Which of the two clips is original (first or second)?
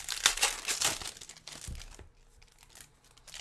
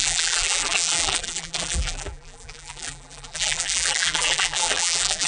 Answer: first